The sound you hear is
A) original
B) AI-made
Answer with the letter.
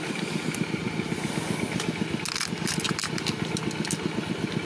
A